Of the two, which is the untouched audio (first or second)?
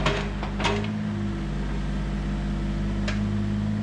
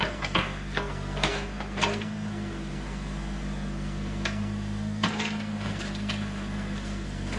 first